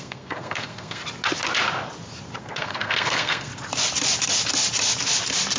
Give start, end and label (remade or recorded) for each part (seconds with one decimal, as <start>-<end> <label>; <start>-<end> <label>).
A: 0.0-1.0 remade; 1.0-2.4 recorded; 2.4-3.5 remade; 3.5-5.6 recorded